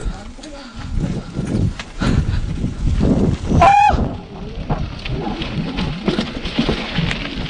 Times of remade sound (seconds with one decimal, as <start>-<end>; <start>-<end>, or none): 0.0-2.9; 3.7-4.3; 5.1-7.0